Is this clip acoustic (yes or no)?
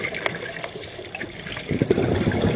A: no